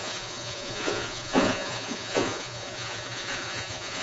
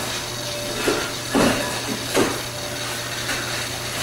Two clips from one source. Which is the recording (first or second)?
second